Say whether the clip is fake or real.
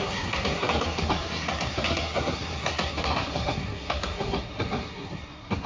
fake